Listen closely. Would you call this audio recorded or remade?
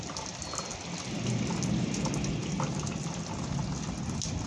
recorded